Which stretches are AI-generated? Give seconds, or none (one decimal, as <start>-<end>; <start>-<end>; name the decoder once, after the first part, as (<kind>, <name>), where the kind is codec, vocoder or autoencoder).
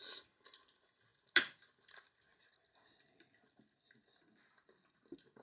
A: none